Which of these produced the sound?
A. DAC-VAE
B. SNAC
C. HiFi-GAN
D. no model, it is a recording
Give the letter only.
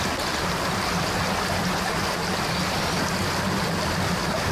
D